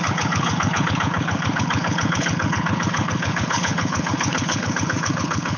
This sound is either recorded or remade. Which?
remade